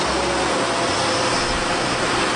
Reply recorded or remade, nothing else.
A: recorded